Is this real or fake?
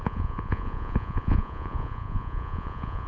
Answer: fake